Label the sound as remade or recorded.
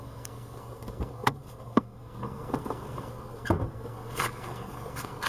remade